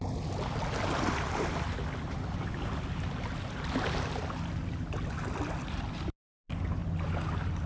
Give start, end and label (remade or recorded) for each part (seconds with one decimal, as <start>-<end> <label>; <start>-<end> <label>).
0.0-7.7 recorded

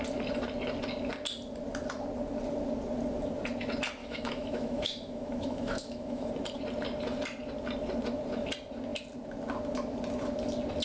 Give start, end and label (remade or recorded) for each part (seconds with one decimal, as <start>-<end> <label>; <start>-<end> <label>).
0.0-4.0 recorded; 4.0-6.3 remade; 6.3-10.8 recorded

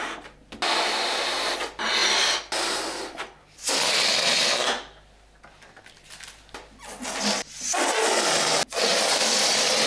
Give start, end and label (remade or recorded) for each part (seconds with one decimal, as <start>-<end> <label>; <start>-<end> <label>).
0.0-9.9 recorded

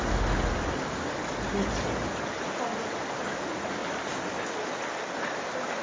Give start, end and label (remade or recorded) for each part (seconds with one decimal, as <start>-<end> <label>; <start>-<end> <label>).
0.0-5.8 recorded

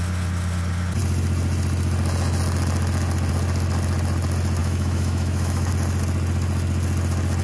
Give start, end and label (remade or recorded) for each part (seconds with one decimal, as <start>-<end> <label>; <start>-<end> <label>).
0.0-4.6 recorded; 4.6-5.7 remade; 5.7-7.4 recorded

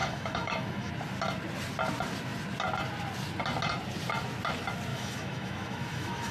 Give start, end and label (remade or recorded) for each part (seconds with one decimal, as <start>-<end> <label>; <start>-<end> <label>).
0.0-0.9 remade; 0.9-4.9 recorded; 4.9-6.3 remade

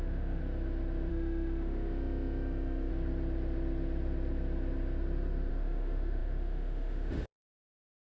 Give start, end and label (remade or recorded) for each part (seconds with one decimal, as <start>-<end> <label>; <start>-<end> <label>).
0.0-0.4 remade; 0.4-1.1 recorded; 1.1-2.9 remade; 2.9-5.5 recorded; 5.5-8.2 remade

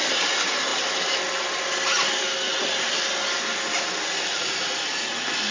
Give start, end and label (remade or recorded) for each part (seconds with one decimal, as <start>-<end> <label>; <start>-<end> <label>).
0.0-5.5 recorded